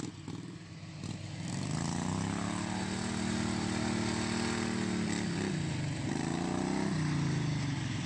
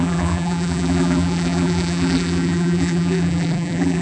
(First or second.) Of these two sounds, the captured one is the first